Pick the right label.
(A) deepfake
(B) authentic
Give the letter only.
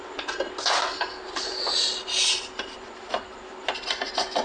B